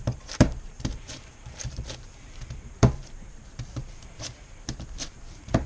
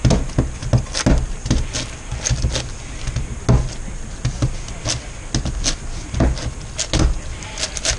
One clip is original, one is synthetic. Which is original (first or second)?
second